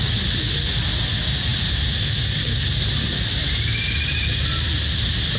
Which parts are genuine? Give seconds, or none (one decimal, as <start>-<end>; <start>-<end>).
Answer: 0.0-5.4